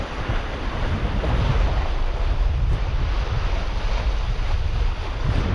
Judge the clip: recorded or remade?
recorded